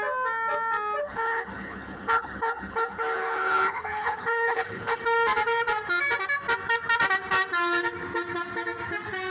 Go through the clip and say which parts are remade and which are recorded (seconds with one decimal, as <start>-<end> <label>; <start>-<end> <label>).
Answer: 0.0-1.0 recorded; 1.0-5.0 remade; 5.0-9.3 recorded